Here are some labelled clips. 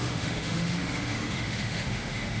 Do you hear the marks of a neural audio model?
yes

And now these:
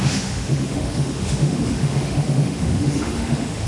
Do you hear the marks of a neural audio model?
yes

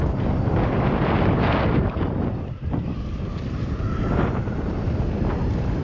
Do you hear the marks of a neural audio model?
no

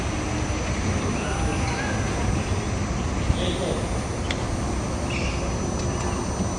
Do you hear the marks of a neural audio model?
no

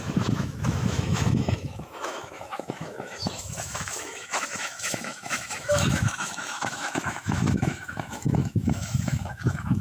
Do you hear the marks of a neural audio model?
yes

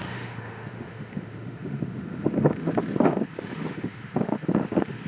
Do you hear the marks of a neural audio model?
yes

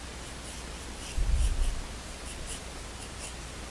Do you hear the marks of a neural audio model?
no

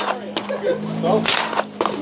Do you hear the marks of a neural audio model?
no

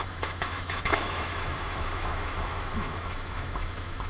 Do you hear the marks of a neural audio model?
yes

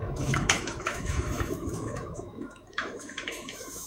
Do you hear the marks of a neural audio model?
yes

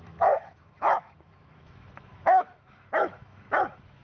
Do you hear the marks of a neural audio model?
yes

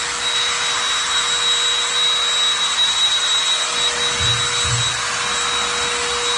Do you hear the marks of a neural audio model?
no